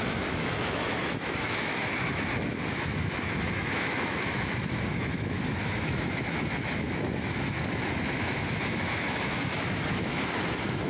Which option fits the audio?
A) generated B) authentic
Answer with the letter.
A